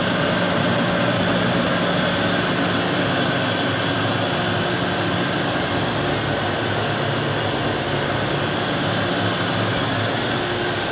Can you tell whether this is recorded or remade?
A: recorded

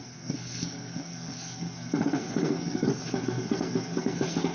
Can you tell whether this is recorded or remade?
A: remade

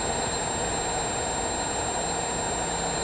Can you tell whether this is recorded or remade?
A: recorded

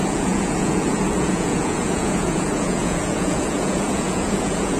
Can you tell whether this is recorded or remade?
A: remade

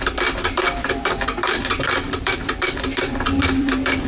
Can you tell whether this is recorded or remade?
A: remade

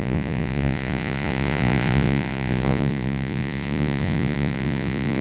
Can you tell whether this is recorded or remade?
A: remade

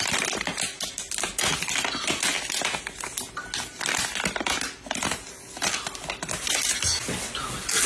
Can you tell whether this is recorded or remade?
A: recorded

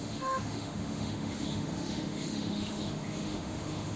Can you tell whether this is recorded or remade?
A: remade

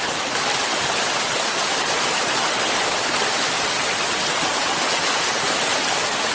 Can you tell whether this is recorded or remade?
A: recorded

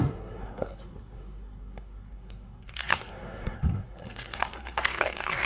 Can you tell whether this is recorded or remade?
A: remade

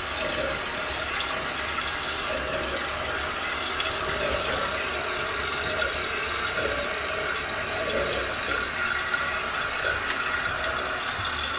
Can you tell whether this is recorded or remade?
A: recorded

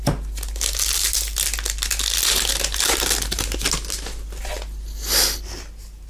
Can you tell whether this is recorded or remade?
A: recorded